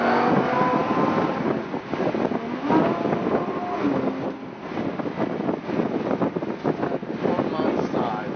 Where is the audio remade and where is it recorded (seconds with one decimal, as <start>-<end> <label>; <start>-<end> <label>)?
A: 0.0-8.4 recorded